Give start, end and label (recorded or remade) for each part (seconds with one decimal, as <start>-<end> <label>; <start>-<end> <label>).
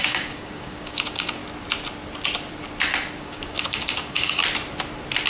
0.0-1.4 remade; 1.4-3.2 recorded; 3.2-4.4 remade; 4.4-5.3 recorded